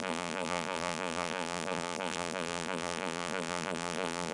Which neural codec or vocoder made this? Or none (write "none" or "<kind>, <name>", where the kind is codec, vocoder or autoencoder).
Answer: vocoder, BigVGAN v2